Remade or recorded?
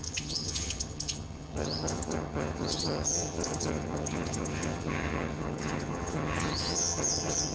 remade